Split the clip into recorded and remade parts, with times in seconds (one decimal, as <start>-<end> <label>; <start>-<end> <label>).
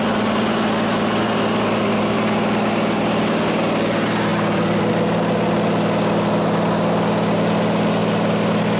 0.0-4.3 recorded; 4.3-4.9 remade; 4.9-8.8 recorded